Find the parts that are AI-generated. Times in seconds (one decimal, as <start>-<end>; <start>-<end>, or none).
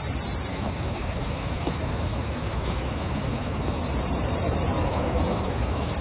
0.5-3.8; 4.8-6.0